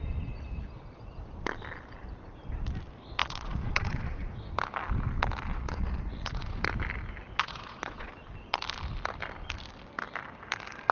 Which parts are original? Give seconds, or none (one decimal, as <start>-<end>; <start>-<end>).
0.0-0.6; 1.2-3.2; 4.5-5.5; 6.6-7.4; 8.1-10.9